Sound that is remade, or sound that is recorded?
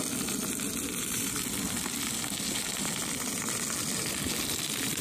recorded